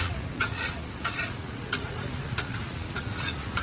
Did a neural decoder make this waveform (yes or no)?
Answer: yes